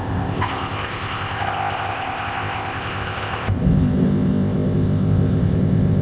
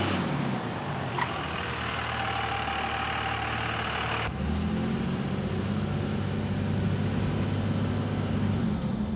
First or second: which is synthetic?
first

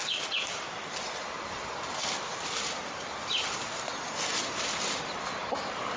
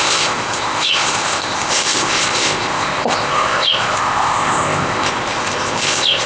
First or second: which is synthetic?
second